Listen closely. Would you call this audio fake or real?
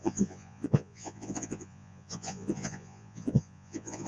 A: fake